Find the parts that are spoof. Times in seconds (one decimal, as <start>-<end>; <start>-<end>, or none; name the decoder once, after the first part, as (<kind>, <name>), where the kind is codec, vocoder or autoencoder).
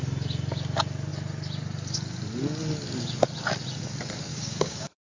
4.3-5.1 (codec, DAC)